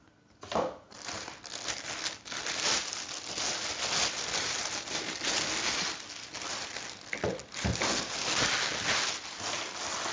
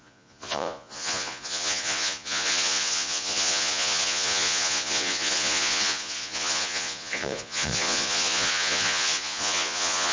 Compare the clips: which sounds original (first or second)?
first